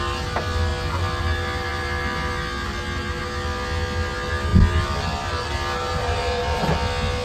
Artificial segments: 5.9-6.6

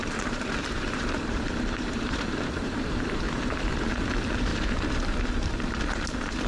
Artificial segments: 0.0-3.9; 4.5-5.7

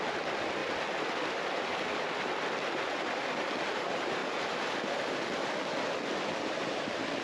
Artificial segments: 0.0-0.6; 1.3-7.2

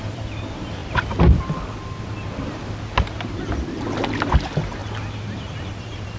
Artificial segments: 0.0-0.8; 4.1-4.8; 5.7-6.2

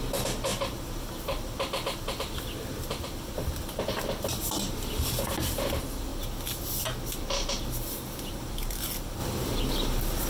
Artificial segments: 0.0-6.1; 8.3-10.3

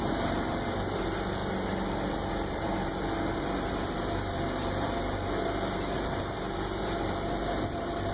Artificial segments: 0.0-1.4; 2.3-2.9; 3.7-8.1